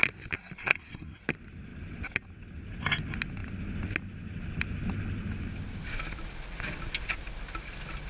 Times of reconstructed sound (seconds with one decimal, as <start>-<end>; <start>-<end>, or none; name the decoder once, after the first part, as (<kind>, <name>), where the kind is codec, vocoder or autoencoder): 0.6-1.2 (codec, SNAC)